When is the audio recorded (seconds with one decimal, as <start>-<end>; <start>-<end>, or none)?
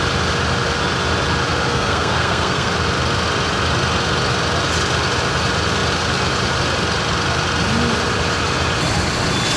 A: 0.0-1.7; 2.7-9.6